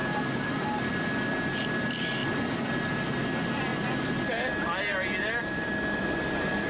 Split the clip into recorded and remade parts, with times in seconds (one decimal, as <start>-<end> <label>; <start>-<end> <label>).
0.0-0.9 remade; 0.9-2.2 recorded; 2.2-3.0 remade; 3.0-5.4 recorded; 5.4-6.7 remade